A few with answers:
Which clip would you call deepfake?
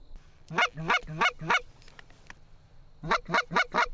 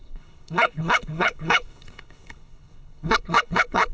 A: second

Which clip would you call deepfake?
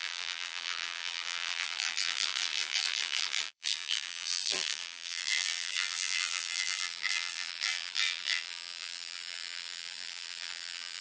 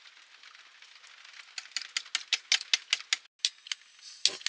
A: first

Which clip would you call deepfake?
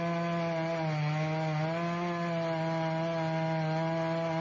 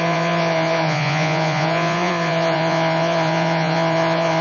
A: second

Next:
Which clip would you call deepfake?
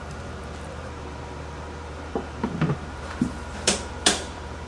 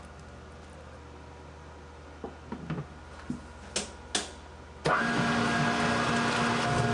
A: first